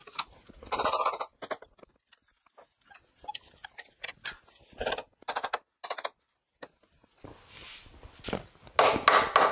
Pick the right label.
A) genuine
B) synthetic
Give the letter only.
A